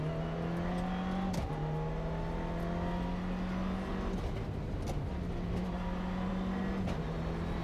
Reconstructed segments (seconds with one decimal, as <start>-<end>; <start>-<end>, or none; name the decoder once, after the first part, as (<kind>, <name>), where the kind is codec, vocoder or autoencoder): none